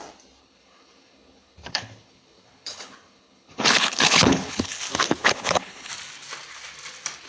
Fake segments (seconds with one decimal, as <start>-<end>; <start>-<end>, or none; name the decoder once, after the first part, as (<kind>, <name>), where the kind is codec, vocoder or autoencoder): 0.4-4.8 (codec, HILCodec); 5.2-5.9